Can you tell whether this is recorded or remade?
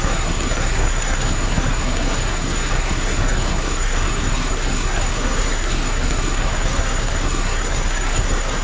remade